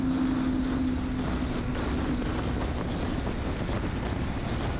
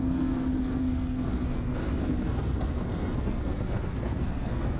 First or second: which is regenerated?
second